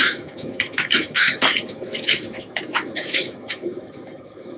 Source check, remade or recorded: remade